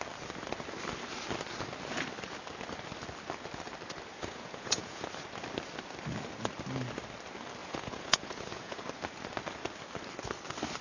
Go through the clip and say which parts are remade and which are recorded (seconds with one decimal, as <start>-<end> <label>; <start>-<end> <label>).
0.0-4.1 recorded; 4.1-5.1 remade; 5.1-7.6 recorded; 7.6-8.8 remade; 8.8-10.8 recorded